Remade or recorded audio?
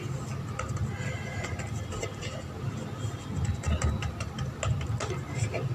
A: recorded